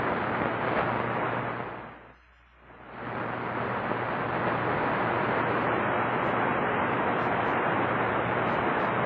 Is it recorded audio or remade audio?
recorded